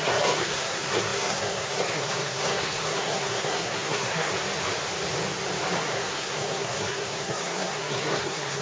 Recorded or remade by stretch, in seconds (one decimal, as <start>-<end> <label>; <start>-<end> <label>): 0.0-4.3 remade; 4.3-5.8 recorded; 5.8-8.6 remade